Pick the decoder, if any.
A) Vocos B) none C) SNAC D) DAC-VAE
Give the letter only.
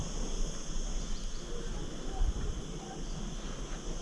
B